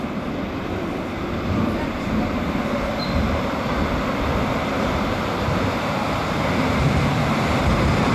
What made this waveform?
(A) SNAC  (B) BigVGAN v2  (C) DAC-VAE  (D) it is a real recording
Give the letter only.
B